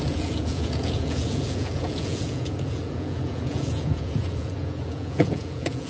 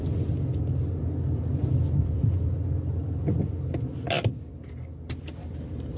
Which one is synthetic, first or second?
first